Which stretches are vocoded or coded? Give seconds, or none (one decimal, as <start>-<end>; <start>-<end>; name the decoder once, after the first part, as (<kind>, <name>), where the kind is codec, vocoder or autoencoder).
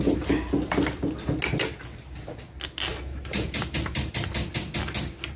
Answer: 2.9-4.1 (vocoder, BigVGAN v2)